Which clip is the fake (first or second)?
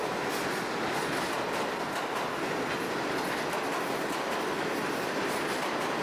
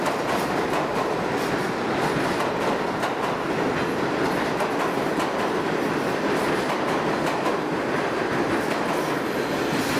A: second